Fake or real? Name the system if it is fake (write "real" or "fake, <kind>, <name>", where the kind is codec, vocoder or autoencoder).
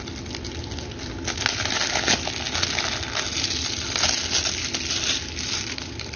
real